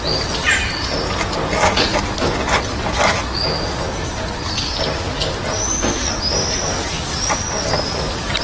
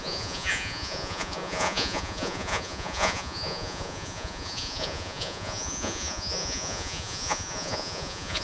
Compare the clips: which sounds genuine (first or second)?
first